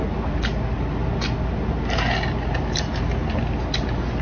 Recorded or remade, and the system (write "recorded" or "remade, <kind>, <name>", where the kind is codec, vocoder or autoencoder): recorded